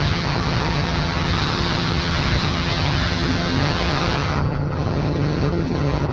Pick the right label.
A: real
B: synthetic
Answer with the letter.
B